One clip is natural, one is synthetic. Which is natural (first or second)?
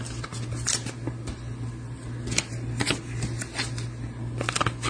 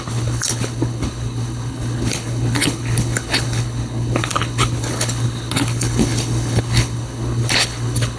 first